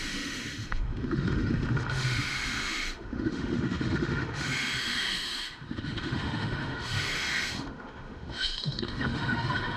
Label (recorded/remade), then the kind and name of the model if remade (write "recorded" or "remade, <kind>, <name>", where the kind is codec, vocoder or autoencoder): remade, autoencoder, DAC-VAE